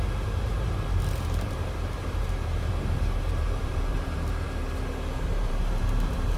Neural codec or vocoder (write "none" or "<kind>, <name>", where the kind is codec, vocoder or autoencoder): vocoder, BigVGAN v2